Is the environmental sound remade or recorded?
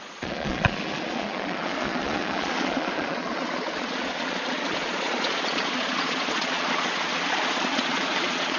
remade